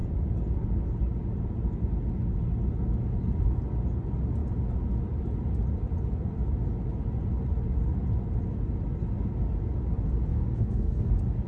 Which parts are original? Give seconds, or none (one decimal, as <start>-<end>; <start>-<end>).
0.0-10.3; 11.1-11.5